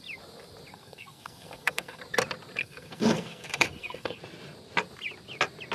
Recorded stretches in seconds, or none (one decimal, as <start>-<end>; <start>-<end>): 0.0-0.7; 2.0-2.6; 4.2-5.7